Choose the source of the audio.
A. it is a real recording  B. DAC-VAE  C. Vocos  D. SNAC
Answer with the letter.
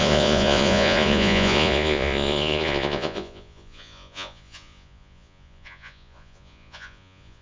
C